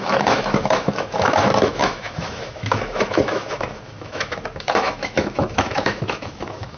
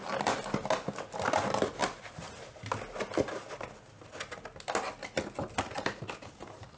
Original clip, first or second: second